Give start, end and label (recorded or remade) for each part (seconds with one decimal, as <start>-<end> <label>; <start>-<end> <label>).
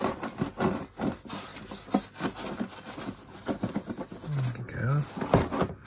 0.0-5.9 recorded